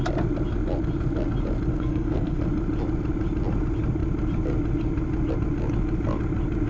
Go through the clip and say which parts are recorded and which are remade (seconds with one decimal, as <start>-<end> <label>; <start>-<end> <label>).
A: 0.0-1.7 recorded; 1.7-2.4 remade; 2.4-6.7 recorded